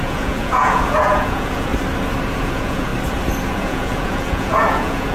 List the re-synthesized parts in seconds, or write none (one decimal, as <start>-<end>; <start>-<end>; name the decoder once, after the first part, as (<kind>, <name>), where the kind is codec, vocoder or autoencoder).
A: 0.0-1.7 (vocoder, Vocos); 2.4-2.9; 3.5-5.1